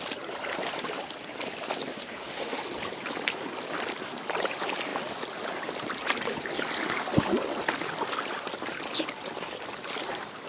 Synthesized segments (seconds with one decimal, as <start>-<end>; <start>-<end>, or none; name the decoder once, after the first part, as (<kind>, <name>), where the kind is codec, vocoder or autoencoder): 1.9-2.6 (autoencoder, DAC-VAE)